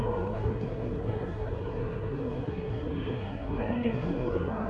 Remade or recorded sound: remade